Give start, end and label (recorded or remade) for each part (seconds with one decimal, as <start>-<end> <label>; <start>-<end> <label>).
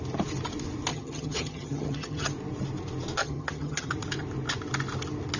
0.0-0.9 recorded; 0.9-2.3 remade; 2.3-3.2 recorded; 3.2-3.9 remade; 3.9-5.4 recorded